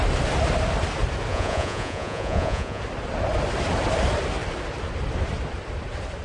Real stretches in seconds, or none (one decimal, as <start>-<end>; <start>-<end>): 0.0-1.3; 2.8-6.2

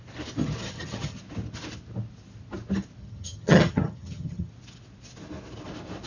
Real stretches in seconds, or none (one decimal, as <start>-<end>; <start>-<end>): 0.0-0.4; 1.2-3.0; 4.5-6.1

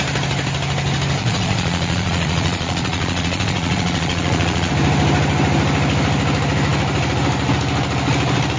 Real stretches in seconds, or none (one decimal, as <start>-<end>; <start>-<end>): 0.0-1.2; 4.7-8.6

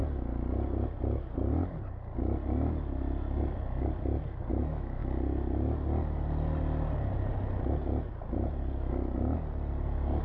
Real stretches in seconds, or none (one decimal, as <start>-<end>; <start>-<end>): 0.0-4.5; 5.0-10.2